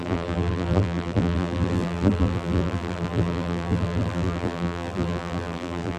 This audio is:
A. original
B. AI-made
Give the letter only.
B